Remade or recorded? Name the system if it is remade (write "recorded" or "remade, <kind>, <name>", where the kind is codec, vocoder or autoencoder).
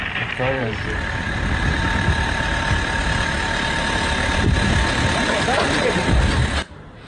remade, vocoder, BigVGAN v2